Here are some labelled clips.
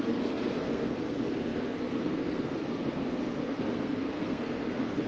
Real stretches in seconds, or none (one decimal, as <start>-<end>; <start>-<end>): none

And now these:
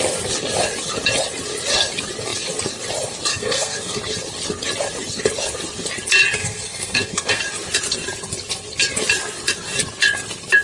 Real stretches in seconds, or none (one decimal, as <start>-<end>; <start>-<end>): 0.0-3.3; 4.0-6.4; 7.4-10.6

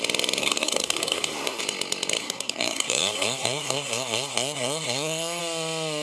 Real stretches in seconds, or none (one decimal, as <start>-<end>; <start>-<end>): 0.0-0.4; 1.6-2.2; 5.4-6.0